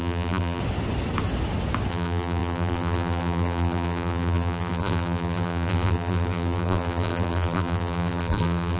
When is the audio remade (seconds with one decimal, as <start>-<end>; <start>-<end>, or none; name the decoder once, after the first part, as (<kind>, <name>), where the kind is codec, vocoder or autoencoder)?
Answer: 0.0-0.6 (vocoder, BigVGAN v2); 1.9-8.8

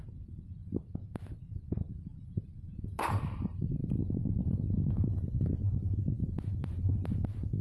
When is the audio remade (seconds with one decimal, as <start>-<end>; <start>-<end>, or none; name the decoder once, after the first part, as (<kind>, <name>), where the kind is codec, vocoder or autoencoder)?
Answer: 0.6-3.1 (vocoder, BigVGAN v2); 3.8-4.6

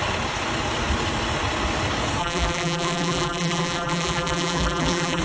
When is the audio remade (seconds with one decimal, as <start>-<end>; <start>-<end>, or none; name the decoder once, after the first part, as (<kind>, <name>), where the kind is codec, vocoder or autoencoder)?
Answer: 2.2-5.2 (vocoder, BigVGAN v2)

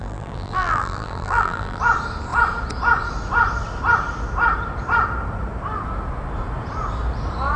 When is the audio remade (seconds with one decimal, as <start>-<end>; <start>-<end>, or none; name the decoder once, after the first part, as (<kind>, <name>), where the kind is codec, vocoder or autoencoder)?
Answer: 0.0-1.8 (vocoder, BigVGAN v2)